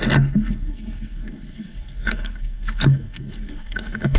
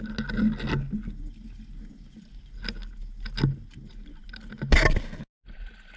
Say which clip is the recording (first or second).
second